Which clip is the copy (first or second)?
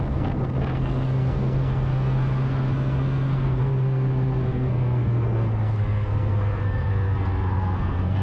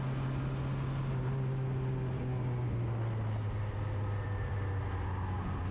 first